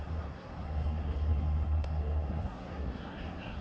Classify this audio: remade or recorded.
remade